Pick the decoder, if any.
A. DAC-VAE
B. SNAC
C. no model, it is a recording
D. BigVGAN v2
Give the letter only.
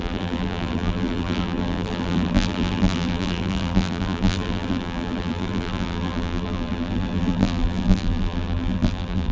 D